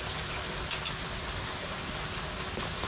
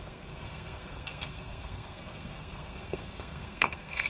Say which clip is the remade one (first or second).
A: second